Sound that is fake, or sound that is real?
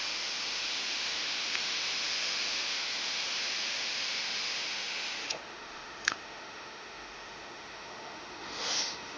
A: fake